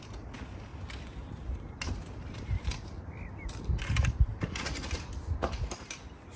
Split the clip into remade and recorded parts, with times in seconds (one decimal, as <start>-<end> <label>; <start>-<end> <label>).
0.0-0.7 recorded; 0.7-1.7 remade; 1.7-6.4 recorded